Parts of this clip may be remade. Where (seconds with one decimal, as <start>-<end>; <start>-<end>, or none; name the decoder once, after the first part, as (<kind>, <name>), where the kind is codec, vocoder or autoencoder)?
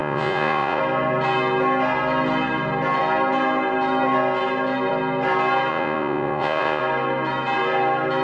0.0-0.8 (vocoder, Vocos); 5.7-6.8